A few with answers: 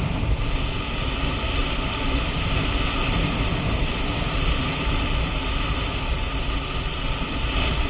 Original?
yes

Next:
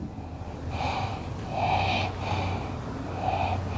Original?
yes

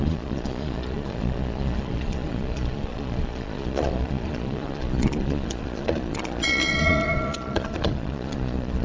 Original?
no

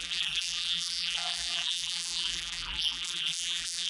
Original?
no